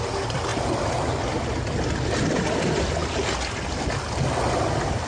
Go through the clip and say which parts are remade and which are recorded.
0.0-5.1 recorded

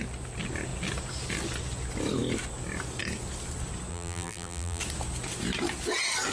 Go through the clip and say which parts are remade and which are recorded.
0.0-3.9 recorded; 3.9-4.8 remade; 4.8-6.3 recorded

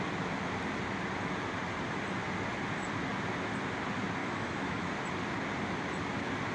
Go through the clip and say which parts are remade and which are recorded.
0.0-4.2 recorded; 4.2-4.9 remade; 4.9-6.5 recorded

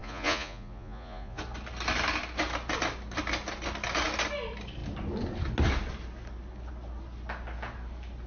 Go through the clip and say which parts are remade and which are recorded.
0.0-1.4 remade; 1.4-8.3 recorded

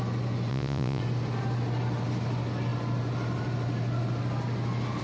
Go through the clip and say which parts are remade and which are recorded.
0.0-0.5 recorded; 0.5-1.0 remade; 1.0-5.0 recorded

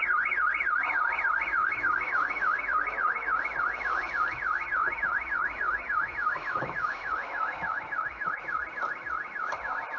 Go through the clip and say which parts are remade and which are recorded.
0.0-1.6 recorded; 1.6-2.6 remade; 2.6-4.8 recorded; 4.8-8.3 remade; 8.3-10.0 recorded

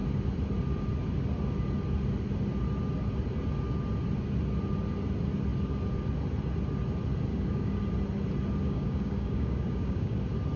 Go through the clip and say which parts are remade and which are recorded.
0.0-7.3 recorded; 7.3-7.8 remade; 7.8-8.6 recorded; 8.6-10.2 remade; 10.2-10.6 recorded

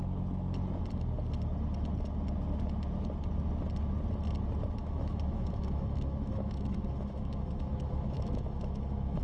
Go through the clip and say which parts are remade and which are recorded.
0.0-4.8 recorded; 4.8-9.2 remade